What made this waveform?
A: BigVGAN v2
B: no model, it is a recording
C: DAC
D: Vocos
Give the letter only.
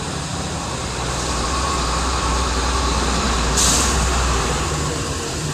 A